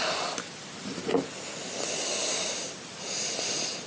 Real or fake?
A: real